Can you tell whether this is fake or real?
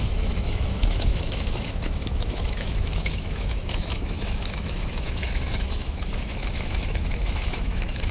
fake